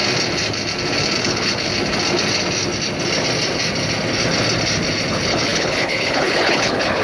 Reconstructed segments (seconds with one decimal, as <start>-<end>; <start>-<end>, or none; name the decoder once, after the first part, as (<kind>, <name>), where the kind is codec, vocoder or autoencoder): 1.2-1.7 (codec, HILCodec); 5.1-7.0

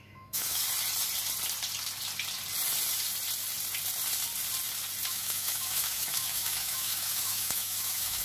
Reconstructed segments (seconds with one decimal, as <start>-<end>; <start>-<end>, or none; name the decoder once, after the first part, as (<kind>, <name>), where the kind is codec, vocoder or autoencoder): 0.0-0.6 (autoencoder, DAC-VAE); 5.1-8.2

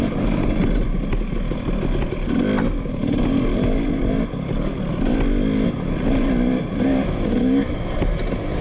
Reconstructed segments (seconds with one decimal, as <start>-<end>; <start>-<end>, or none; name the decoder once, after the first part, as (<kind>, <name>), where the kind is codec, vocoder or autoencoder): none